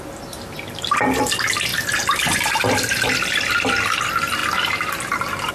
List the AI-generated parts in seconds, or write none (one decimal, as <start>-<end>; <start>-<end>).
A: none